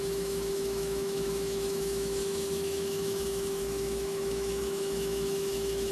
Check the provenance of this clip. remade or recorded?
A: remade